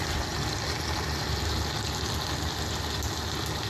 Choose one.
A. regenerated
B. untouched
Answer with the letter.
B